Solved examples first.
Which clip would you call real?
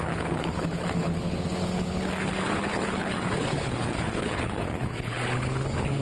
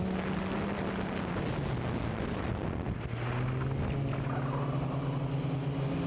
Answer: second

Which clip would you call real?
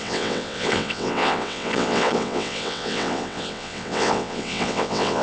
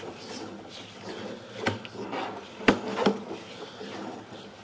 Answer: second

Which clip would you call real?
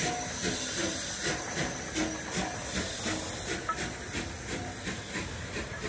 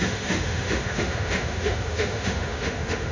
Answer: first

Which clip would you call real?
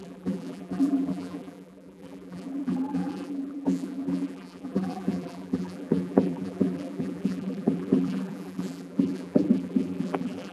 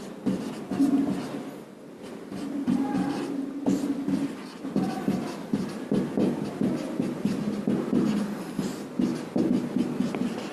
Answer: second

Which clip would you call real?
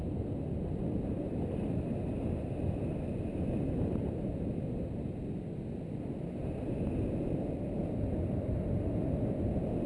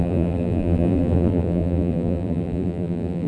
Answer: first